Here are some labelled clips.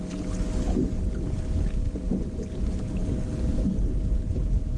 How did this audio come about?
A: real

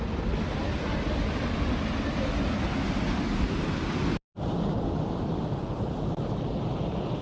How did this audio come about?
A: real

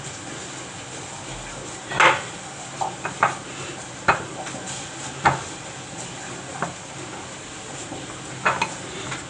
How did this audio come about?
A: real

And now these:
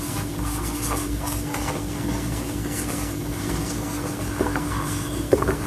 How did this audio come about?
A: fake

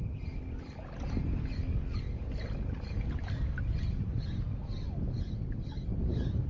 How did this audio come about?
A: real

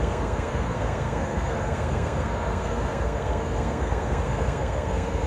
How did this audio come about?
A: fake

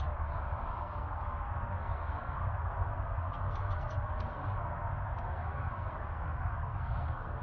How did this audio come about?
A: fake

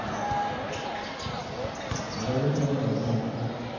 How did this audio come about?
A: real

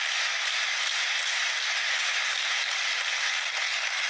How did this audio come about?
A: real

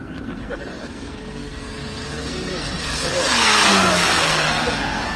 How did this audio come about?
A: fake